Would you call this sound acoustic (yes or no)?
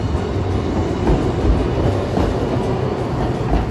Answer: yes